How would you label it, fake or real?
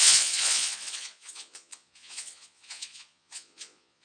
fake